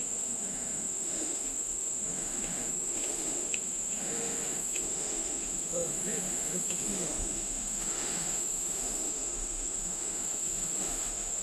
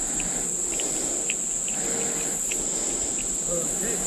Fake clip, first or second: first